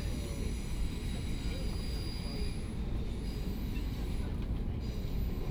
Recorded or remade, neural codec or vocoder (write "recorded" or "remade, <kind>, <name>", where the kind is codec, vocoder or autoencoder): recorded